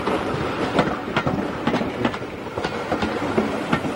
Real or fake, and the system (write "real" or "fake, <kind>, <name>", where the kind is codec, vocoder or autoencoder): real